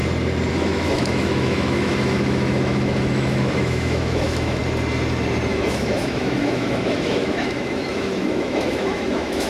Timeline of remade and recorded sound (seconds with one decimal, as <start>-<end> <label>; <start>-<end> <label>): 0.0-0.5 recorded; 0.5-4.6 remade; 4.6-5.5 recorded; 5.5-9.5 remade